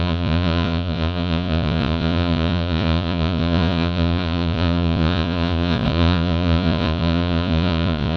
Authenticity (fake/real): fake